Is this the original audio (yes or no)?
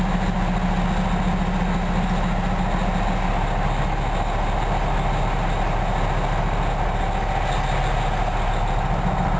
yes